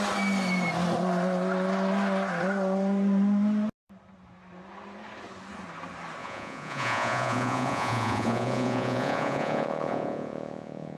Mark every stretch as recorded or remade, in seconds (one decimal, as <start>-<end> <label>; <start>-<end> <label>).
0.0-6.2 recorded; 6.2-11.0 remade